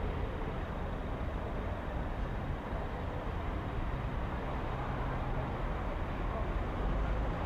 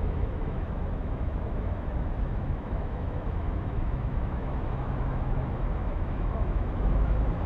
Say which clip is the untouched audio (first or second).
first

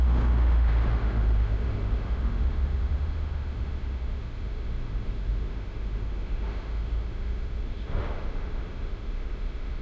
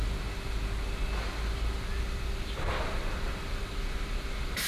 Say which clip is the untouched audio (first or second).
second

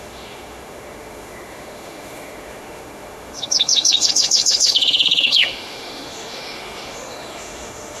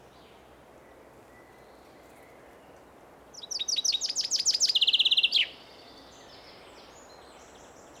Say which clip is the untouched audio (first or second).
second